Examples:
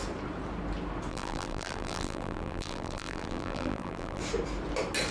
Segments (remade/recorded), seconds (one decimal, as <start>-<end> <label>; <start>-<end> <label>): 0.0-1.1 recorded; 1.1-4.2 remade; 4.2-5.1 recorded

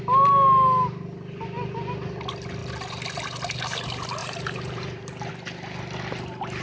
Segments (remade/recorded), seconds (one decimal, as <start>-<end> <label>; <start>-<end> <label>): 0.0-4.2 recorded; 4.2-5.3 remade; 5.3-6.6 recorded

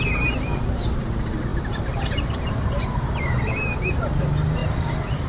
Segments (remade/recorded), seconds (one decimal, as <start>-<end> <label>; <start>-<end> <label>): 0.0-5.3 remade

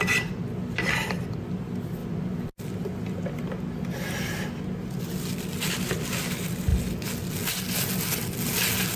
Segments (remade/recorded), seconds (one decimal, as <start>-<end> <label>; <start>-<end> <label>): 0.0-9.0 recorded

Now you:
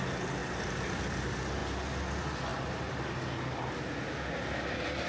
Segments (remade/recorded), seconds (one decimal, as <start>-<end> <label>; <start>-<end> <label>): 0.0-0.4 recorded; 0.4-1.0 remade; 1.0-2.5 recorded; 2.5-3.1 remade; 3.1-5.1 recorded

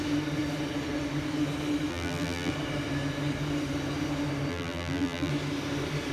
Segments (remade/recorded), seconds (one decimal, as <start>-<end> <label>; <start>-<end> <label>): 0.0-1.9 recorded; 1.9-2.5 remade; 2.5-4.5 recorded; 4.5-5.3 remade; 5.3-6.1 recorded